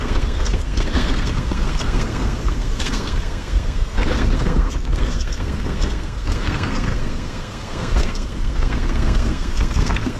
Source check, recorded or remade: remade